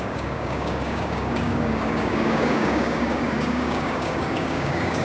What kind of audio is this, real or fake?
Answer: fake